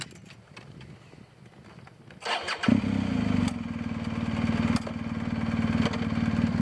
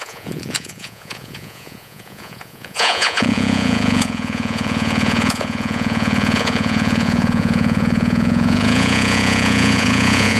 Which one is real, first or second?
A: first